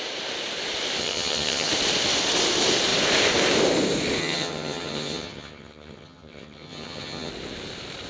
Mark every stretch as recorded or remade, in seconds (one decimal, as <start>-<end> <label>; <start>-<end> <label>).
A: 0.0-1.0 recorded; 1.0-1.7 remade; 1.7-4.2 recorded; 4.2-7.3 remade; 7.3-8.1 recorded